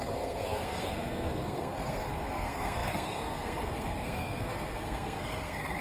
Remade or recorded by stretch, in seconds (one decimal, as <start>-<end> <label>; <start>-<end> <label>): 0.0-5.8 remade